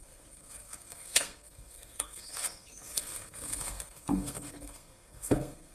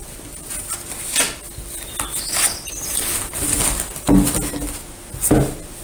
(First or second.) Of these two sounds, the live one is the second